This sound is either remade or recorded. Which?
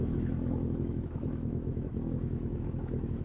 remade